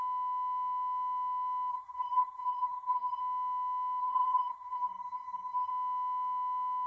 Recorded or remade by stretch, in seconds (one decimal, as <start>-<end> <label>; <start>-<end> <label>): 0.0-1.7 recorded; 1.7-3.2 remade; 3.2-4.0 recorded; 4.0-5.7 remade; 5.7-6.9 recorded